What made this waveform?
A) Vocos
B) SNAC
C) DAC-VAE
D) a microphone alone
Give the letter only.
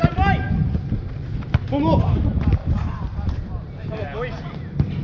D